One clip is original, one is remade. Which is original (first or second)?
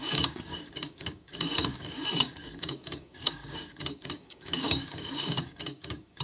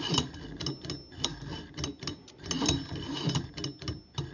second